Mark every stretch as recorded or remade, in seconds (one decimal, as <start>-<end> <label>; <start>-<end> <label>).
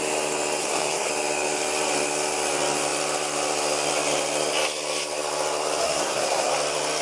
0.0-0.6 recorded; 0.6-1.1 remade; 1.1-5.8 recorded; 5.8-6.5 remade; 6.5-7.0 recorded